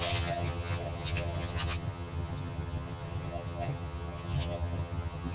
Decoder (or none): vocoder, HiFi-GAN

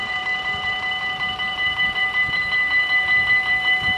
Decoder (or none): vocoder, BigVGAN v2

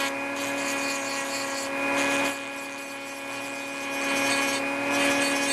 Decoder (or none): none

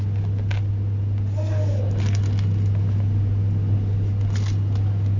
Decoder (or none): none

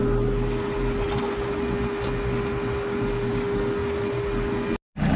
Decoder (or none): none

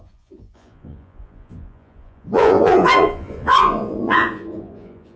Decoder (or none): vocoder, Vocos